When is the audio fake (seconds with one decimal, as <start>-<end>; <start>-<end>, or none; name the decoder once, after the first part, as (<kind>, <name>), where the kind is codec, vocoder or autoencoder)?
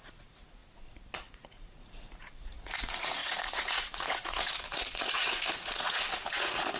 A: 0.0-0.6 (vocoder, Vocos); 1.3-6.8